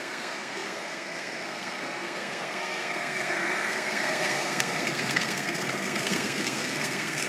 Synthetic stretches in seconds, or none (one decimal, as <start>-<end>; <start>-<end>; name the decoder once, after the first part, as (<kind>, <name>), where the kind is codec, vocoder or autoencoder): 0.0-7.3 (codec, SNAC)